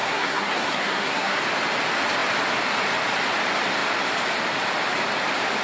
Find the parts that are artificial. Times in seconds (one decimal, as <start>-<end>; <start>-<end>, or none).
0.0-1.4